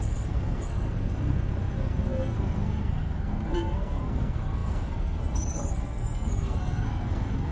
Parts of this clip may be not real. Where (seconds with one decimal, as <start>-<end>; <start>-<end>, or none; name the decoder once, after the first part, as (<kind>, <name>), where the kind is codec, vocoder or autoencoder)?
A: 0.0-7.5 (codec, SNAC)